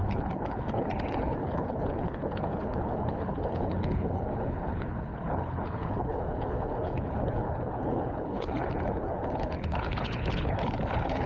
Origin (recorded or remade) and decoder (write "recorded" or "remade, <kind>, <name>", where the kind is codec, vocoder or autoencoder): remade, codec, HILCodec